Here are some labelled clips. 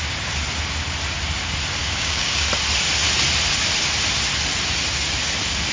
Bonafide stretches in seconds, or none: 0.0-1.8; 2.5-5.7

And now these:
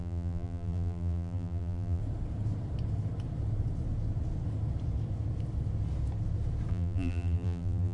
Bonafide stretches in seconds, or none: 2.0-6.7

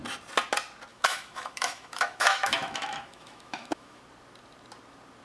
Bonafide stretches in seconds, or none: 0.0-0.9; 4.0-5.2

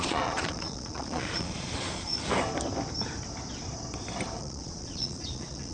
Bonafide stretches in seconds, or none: 2.1-4.3

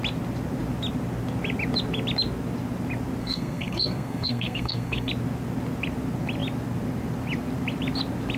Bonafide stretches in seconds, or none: 0.0-3.2; 5.1-8.4